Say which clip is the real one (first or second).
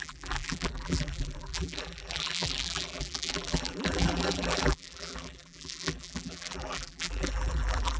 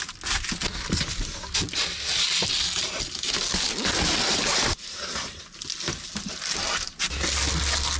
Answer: second